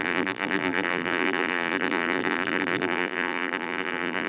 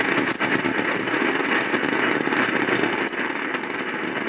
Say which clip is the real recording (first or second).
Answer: second